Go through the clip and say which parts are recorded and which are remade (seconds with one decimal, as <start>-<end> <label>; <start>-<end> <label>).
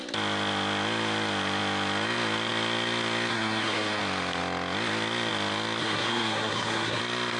0.0-3.3 recorded; 3.3-4.0 remade; 4.0-5.8 recorded; 5.8-7.0 remade; 7.0-7.4 recorded